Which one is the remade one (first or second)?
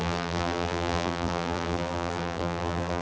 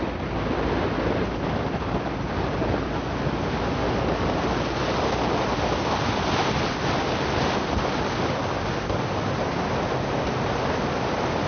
first